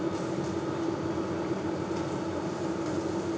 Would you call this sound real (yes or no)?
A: yes